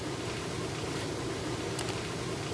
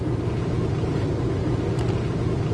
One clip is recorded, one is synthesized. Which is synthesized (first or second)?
first